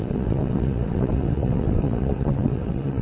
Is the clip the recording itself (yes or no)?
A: no